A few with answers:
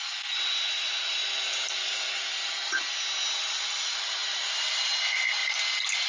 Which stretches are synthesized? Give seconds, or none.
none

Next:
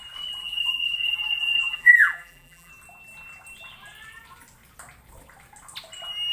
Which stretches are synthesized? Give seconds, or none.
0.4-2.7 (vocoder, BigVGAN v2)

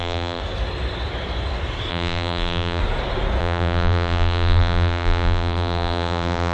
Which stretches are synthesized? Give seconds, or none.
0.0-0.4 (vocoder, BigVGAN v2); 1.9-2.8; 3.4-6.5

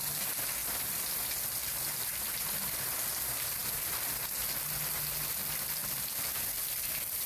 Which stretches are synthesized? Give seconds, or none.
0.6-2.4 (vocoder, BigVGAN v2); 3.6-4.4; 5.8-7.3

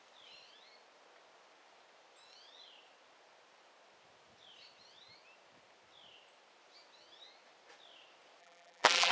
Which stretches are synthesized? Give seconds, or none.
8.4-9.1 (vocoder, BigVGAN v2)